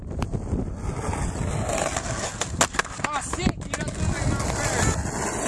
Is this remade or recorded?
recorded